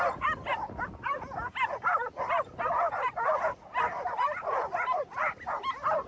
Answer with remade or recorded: recorded